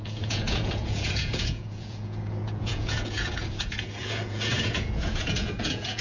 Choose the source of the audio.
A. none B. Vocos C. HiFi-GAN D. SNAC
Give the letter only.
B